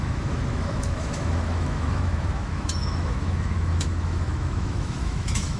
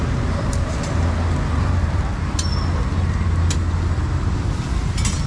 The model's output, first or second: first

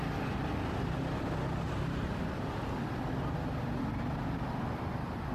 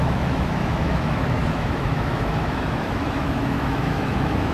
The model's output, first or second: second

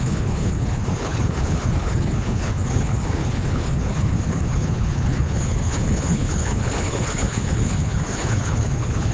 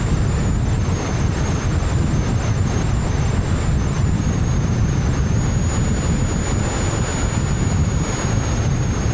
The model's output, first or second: first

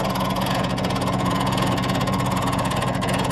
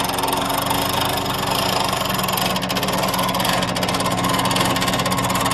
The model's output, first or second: first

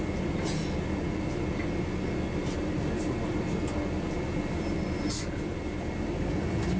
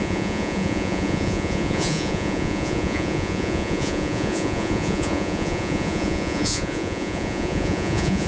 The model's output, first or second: second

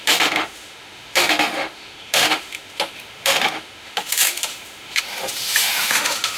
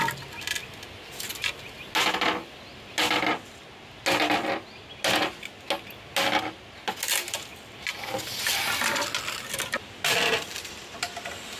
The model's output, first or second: first